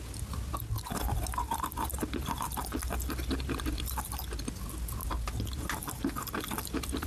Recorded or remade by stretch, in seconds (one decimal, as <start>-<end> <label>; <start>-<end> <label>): 0.0-7.1 recorded